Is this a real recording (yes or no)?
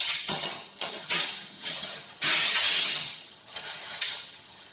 no